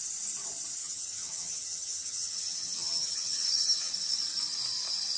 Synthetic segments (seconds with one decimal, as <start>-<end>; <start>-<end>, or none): 0.8-3.9